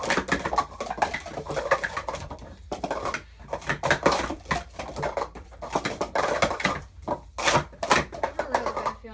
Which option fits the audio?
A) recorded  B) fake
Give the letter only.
A